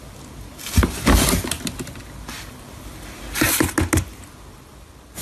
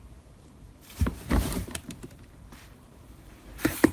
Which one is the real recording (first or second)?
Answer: first